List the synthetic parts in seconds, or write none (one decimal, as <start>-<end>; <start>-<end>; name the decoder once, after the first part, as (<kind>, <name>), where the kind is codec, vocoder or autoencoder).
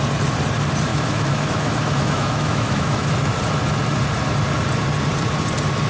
0.9-3.1 (autoencoder, DAC-VAE)